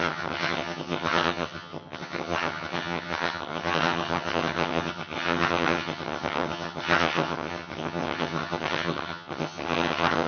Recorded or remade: remade